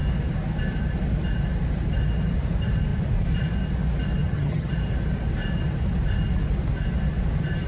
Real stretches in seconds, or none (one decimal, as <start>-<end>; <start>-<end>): 0.0-4.2; 4.7-7.7